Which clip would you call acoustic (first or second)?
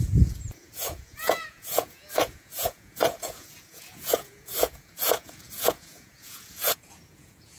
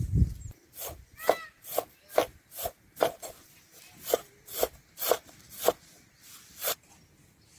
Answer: second